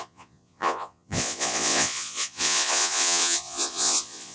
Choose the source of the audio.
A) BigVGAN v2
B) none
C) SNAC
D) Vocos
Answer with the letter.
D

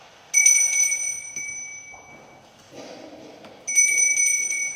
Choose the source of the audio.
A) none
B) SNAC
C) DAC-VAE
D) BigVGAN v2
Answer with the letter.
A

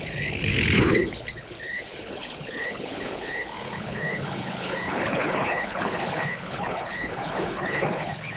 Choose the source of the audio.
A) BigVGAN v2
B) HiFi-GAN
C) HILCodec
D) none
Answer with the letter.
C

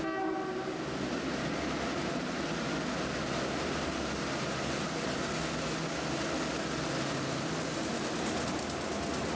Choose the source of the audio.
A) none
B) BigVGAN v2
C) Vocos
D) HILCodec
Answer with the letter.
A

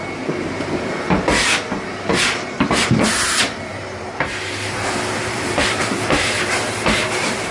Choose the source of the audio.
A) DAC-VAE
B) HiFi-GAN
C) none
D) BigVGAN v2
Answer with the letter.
D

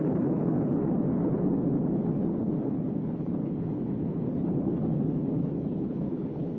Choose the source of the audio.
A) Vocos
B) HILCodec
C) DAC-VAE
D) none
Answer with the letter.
B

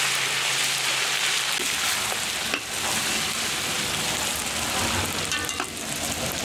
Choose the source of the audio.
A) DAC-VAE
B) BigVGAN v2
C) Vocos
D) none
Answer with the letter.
D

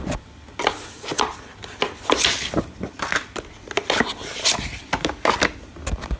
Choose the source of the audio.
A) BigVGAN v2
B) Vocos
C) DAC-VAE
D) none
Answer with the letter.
D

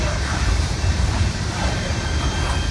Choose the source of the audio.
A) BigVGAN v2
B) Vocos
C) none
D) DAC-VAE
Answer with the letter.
A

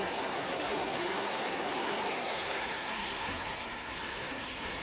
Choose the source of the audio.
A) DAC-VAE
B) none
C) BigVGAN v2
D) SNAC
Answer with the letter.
D